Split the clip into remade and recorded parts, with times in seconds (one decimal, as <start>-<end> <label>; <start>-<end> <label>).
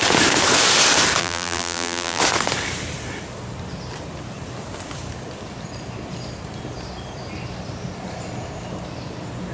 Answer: 0.0-1.2 recorded; 1.2-2.2 remade; 2.2-9.5 recorded